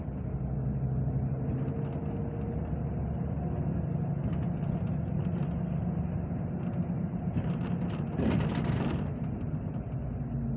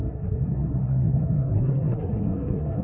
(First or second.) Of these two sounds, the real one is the first